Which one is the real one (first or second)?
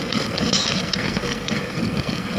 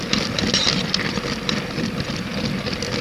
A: second